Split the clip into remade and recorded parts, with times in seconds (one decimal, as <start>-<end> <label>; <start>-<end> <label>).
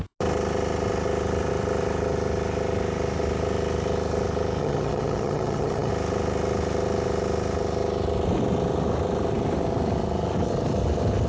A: 0.0-4.6 recorded; 4.6-5.9 remade; 5.9-11.3 recorded